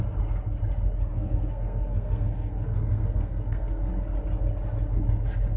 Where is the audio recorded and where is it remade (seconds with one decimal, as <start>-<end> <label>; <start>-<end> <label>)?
0.0-1.1 recorded; 1.1-3.9 remade; 3.9-5.6 recorded

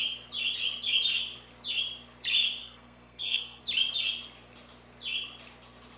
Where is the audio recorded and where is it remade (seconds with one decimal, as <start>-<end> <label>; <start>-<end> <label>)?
0.0-2.6 recorded; 2.6-3.6 remade; 3.6-6.0 recorded

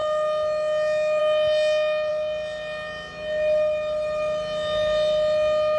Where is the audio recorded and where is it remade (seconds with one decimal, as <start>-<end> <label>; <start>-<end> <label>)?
0.0-5.8 recorded

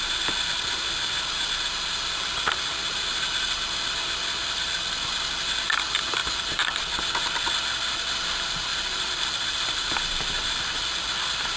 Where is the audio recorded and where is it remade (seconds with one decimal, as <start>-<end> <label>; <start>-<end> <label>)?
0.0-6.2 recorded; 6.2-6.8 remade; 6.8-8.7 recorded; 8.7-9.8 remade; 9.8-11.6 recorded

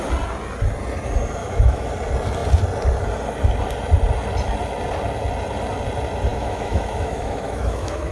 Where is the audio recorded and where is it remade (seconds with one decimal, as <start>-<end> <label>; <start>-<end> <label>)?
0.0-1.4 recorded; 1.4-1.9 remade; 1.9-6.3 recorded; 6.3-8.1 remade

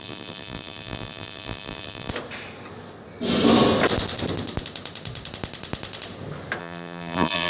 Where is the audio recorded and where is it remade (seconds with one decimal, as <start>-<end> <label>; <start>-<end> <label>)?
0.0-2.1 remade; 2.1-6.6 recorded; 6.6-7.5 remade